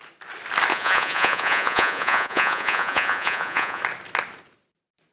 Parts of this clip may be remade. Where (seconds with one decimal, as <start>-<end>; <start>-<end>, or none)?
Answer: 0.7-3.8